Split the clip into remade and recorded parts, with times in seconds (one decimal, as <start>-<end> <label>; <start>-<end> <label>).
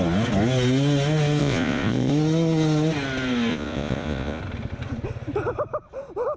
0.0-1.4 recorded; 1.4-2.1 remade; 2.1-3.5 recorded; 3.5-4.4 remade; 4.4-6.4 recorded